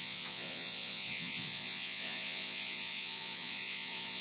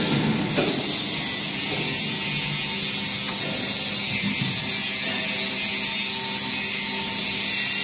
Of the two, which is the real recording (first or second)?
second